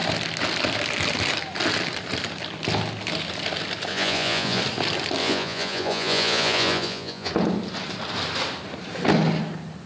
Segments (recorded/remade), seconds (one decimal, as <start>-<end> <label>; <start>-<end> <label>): 0.0-3.9 recorded; 3.9-4.6 remade; 4.6-5.2 recorded; 5.2-7.3 remade; 7.3-9.9 recorded